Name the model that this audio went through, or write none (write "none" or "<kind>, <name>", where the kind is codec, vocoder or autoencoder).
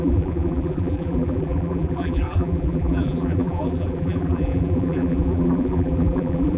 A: vocoder, BigVGAN v2